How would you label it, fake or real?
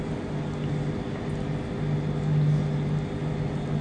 real